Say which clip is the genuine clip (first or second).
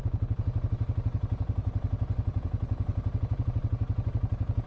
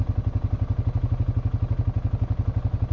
second